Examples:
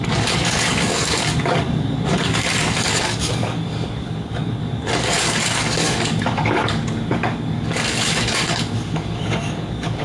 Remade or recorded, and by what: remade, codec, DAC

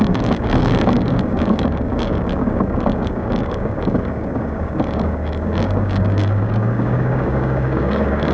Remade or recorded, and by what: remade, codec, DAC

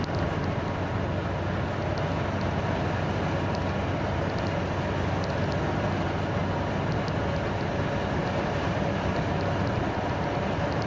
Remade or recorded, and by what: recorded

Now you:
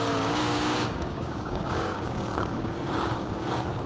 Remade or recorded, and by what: remade, codec, DAC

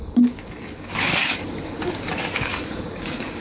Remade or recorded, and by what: remade, codec, DAC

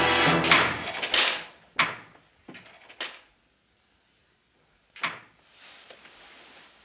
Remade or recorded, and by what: recorded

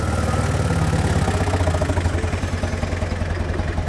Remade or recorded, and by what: recorded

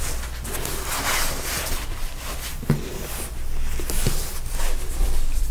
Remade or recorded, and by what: recorded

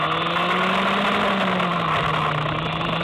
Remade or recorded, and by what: recorded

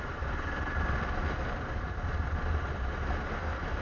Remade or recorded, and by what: recorded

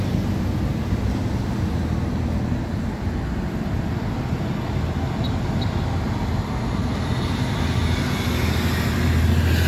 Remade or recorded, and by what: recorded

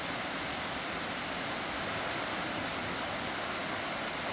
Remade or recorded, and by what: recorded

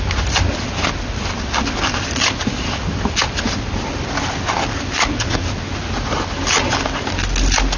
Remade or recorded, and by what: recorded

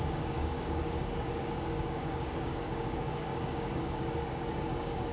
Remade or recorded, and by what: remade, codec, DAC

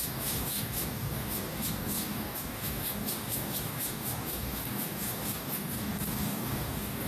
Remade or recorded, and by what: remade, codec, DAC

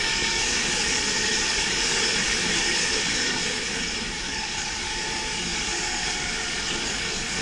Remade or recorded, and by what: remade, codec, DAC